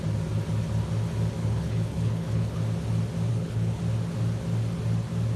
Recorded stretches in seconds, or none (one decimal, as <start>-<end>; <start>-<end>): 0.0-1.4; 2.6-3.3; 3.8-5.4